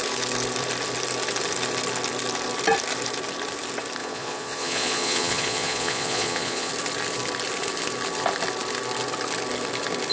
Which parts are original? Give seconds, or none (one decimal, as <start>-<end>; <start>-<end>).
0.0-4.0; 6.7-10.1